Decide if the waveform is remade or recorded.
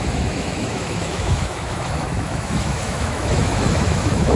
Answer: remade